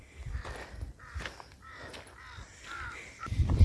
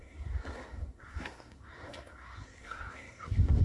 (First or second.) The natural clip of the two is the first